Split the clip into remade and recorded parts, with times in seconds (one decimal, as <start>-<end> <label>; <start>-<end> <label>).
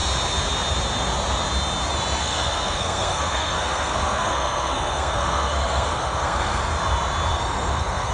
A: 0.0-2.2 recorded; 2.2-6.6 remade; 6.6-7.3 recorded; 7.3-8.1 remade